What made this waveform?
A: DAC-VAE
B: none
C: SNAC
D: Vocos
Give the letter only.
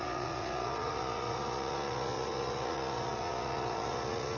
D